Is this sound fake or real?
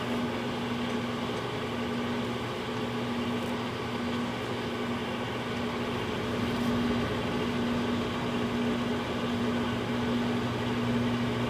real